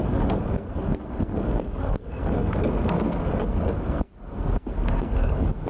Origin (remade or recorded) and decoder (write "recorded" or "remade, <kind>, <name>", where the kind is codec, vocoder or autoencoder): remade, codec, SNAC